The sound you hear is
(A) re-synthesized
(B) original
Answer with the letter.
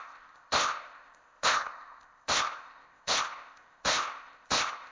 A